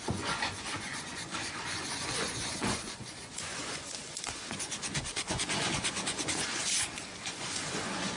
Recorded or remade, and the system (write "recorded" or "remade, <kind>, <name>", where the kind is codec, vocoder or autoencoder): remade, vocoder, Vocos